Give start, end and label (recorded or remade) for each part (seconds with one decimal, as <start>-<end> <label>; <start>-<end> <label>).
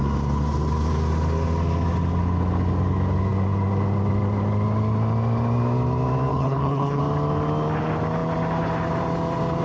0.0-6.3 recorded; 6.3-7.0 remade; 7.0-9.6 recorded